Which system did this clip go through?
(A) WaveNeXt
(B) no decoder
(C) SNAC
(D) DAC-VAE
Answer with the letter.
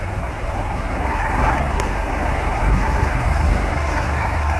C